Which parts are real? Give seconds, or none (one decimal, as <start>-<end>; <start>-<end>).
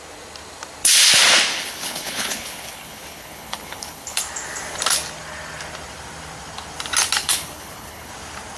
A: 0.0-1.5; 4.2-7.2; 8.1-8.6